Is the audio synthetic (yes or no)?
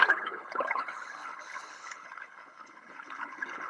yes